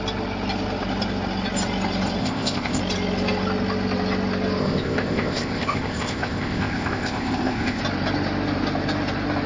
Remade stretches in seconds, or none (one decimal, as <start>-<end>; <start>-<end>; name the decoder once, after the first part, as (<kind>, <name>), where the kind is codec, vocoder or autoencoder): 2.2-2.8 (codec, ZipCodec); 4.6-7.8